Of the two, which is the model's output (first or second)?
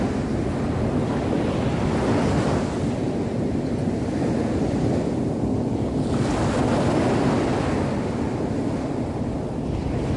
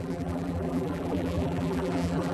second